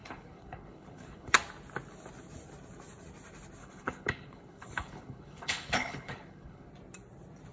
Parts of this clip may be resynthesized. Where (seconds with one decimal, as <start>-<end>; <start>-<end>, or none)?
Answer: 0.0-1.3; 3.6-6.7